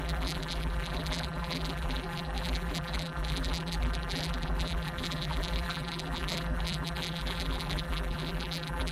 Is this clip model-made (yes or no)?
yes